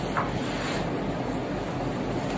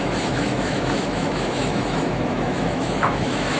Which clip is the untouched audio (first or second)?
first